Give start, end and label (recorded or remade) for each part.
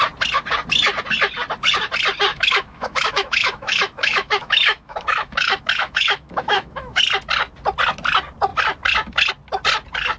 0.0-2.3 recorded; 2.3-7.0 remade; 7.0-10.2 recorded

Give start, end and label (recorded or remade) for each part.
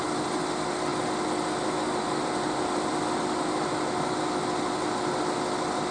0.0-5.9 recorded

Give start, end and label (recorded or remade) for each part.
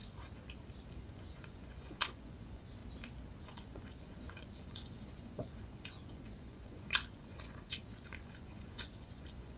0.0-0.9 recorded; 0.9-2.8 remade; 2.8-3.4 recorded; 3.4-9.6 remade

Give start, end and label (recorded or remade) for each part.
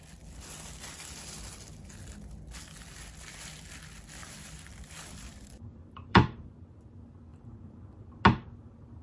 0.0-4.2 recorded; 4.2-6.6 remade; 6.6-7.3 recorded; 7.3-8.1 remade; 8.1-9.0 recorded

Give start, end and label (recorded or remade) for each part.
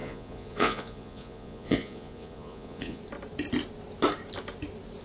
0.0-3.0 remade; 3.0-5.0 recorded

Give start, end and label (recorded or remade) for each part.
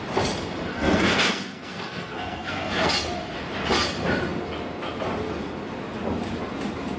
0.0-0.7 recorded; 0.7-2.9 remade; 2.9-7.0 recorded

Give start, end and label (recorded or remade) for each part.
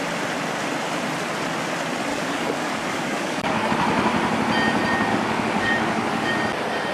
0.0-2.1 recorded; 2.1-3.7 remade; 3.7-5.1 recorded; 5.1-6.3 remade; 6.3-6.9 recorded